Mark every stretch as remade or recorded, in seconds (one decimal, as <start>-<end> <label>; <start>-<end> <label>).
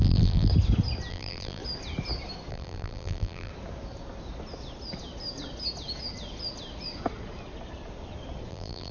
0.0-0.5 remade; 0.5-1.1 recorded; 1.1-1.6 remade; 1.6-2.5 recorded; 2.5-3.5 remade; 3.5-8.5 recorded; 8.5-8.9 remade